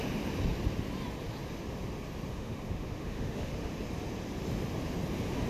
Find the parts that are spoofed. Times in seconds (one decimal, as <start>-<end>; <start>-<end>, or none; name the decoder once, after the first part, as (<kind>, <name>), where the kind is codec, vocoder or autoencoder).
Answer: 2.3-3.7 (autoencoder, DAC-VAE)